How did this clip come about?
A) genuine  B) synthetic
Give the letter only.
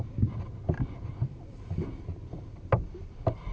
A